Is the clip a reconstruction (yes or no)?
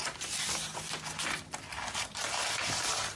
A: no